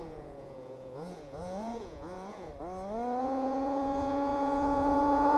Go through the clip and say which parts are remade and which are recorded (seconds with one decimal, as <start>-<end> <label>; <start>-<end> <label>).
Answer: 0.0-2.5 remade; 2.5-3.2 recorded; 3.2-5.4 remade